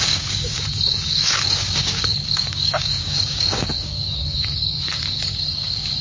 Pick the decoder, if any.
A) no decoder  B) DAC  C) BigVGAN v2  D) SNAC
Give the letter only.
B